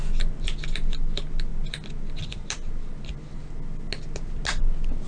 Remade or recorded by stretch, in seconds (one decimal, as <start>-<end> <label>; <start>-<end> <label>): 0.0-5.1 recorded